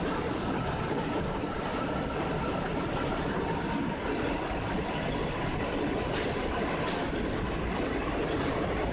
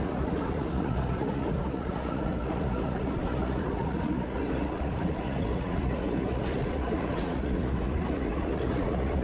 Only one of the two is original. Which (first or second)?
first